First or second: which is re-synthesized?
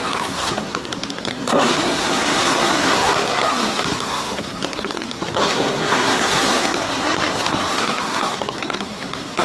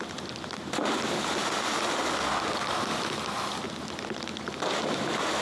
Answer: first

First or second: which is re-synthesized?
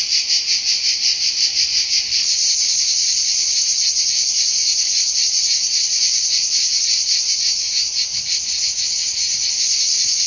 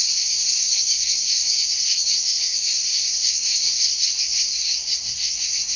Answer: second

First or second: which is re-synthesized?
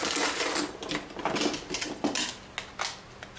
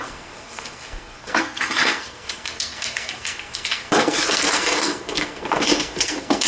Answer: second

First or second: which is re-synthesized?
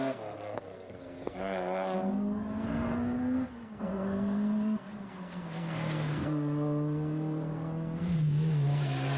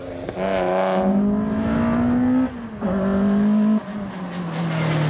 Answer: first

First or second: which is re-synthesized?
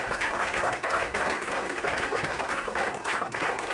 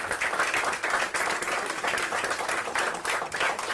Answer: first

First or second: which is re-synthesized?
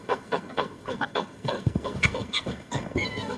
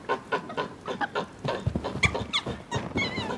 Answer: first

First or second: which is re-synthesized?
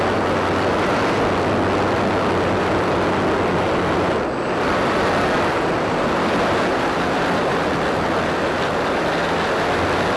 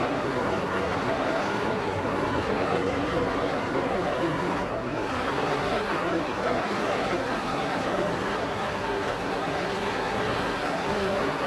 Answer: second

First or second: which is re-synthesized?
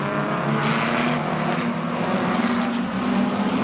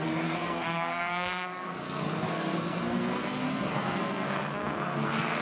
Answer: second